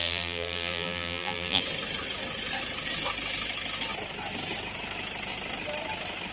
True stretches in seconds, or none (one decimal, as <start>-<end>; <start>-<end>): 1.6-6.3